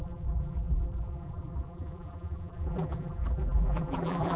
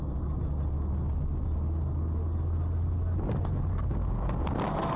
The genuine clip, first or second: second